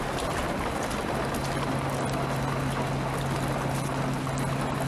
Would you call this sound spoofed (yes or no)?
no